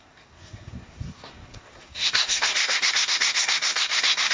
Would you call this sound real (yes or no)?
no